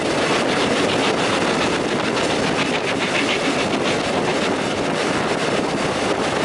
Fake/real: real